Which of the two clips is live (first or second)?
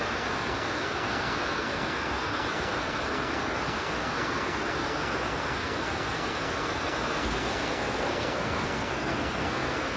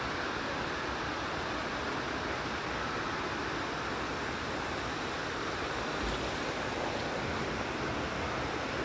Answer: second